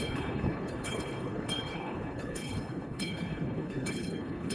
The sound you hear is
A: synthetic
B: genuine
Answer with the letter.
A